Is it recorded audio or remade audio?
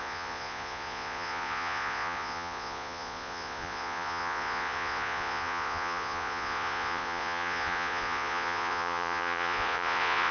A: remade